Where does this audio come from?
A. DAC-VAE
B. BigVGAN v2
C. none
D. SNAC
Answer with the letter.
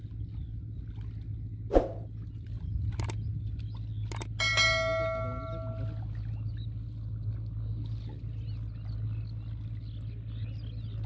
C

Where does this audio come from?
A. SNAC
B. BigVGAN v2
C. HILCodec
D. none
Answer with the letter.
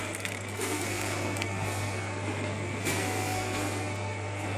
A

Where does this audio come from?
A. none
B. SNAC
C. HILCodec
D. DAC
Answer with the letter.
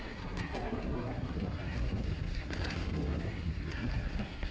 B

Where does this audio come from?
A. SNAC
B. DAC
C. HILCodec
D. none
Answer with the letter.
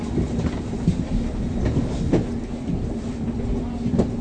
D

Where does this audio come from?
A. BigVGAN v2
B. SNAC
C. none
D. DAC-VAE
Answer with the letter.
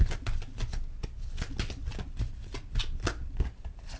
C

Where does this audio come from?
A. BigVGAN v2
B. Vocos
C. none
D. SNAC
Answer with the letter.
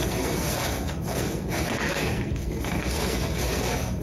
D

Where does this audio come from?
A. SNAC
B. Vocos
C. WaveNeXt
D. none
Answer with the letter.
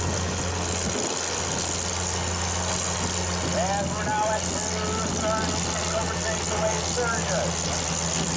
D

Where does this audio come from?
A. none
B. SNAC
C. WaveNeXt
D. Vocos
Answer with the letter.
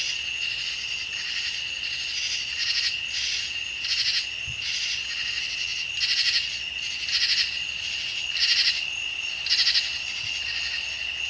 A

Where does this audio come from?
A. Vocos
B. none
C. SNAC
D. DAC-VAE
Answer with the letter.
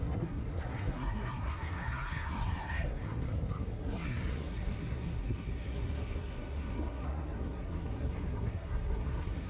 C